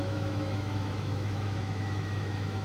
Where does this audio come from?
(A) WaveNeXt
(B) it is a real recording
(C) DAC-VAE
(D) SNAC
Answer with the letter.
C